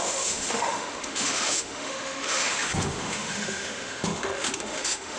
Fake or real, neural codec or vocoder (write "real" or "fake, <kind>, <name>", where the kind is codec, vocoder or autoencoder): fake, autoencoder, DAC-VAE